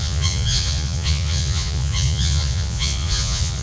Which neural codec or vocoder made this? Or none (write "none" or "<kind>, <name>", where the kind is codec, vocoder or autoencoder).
vocoder, Vocos